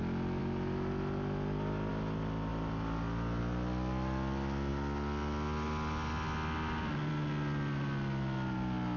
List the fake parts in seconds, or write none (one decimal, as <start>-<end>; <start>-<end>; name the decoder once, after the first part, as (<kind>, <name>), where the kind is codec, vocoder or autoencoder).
none